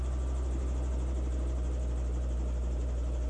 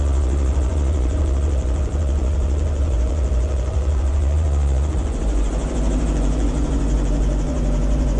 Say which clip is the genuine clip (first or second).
first